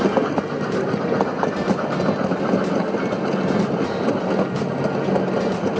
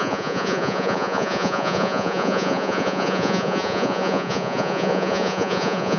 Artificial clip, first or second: second